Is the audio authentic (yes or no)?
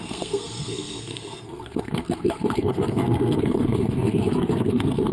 no